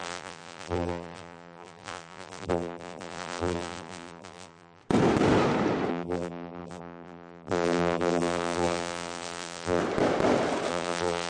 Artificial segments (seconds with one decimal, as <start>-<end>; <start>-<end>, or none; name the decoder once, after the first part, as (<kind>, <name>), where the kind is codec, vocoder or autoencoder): 0.0-4.8 (vocoder, BigVGAN v2); 5.9-9.8; 10.7-11.3